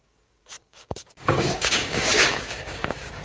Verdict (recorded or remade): remade